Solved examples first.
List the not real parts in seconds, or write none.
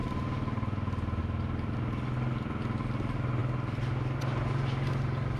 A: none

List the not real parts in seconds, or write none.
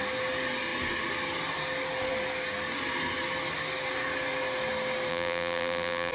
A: 5.1-6.1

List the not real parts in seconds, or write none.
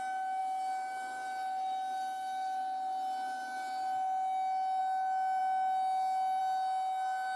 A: none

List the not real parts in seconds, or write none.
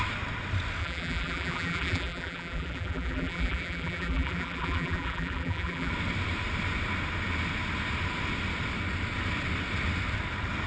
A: 0.8-5.9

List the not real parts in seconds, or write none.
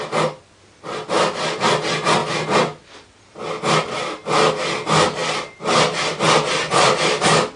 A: 5.2-6.1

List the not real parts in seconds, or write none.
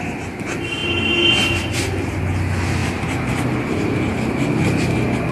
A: none